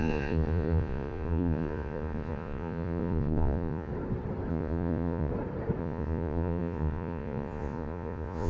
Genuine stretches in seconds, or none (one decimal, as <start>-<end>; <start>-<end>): 3.9-4.5; 5.3-5.8